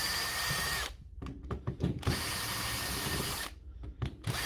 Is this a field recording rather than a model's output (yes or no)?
no